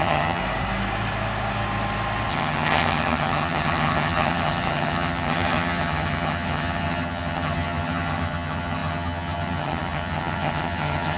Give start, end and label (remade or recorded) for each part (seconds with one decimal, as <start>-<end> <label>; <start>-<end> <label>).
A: 0.0-0.4 remade; 0.4-2.3 recorded; 2.3-11.2 remade